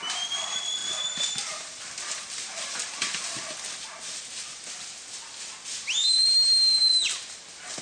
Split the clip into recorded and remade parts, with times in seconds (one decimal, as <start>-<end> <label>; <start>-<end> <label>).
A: 0.0-7.8 recorded